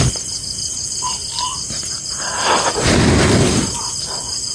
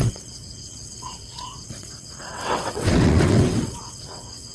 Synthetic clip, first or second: second